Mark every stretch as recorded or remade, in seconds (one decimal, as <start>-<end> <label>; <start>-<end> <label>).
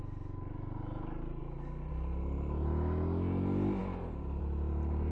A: 0.0-3.8 recorded; 3.8-4.4 remade; 4.4-5.1 recorded